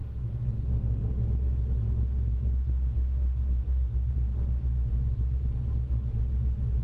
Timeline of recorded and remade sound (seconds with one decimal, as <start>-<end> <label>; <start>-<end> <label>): 0.0-1.1 remade; 1.1-3.6 recorded; 3.6-4.1 remade; 4.1-6.8 recorded